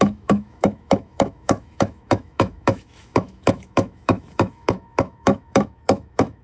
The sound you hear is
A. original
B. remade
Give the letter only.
B